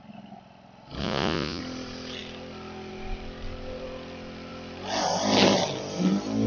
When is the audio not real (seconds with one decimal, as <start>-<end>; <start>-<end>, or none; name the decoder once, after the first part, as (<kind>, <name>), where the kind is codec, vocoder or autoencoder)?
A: 1.0-1.6 (vocoder, Vocos)